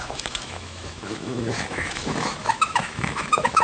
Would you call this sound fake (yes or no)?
yes